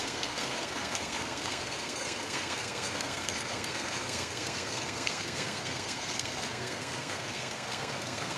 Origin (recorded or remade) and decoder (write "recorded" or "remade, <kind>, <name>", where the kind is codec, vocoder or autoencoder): remade, codec, SNAC